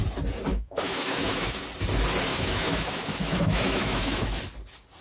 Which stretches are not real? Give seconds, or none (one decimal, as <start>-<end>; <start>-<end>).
0.5-1.6; 2.3-4.4

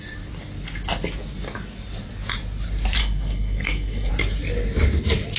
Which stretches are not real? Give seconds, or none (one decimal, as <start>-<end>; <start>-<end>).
3.0-4.1

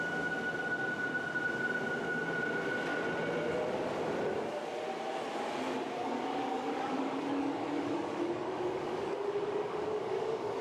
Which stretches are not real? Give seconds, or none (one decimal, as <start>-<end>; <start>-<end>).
6.0-10.6

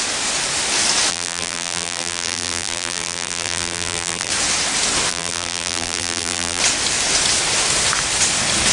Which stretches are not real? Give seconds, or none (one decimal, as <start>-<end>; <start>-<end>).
1.1-4.3; 5.1-6.6